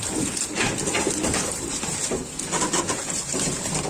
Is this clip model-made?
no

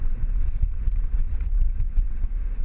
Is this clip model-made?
yes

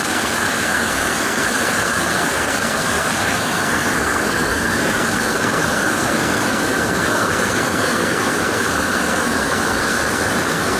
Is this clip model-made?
yes